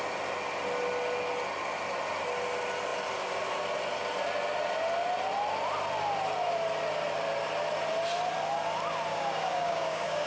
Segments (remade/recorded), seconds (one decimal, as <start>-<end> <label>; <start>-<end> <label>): 0.0-9.1 recorded; 9.1-10.3 remade